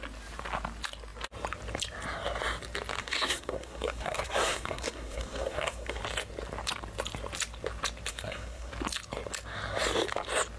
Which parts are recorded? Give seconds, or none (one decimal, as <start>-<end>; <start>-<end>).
0.0-3.0; 6.0-8.1; 8.7-10.6